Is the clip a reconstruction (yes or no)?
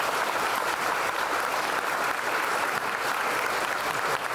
no